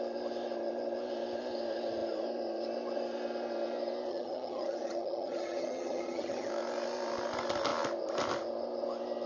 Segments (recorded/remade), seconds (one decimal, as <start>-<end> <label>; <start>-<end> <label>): 0.0-4.1 recorded; 4.1-6.5 remade; 6.5-9.3 recorded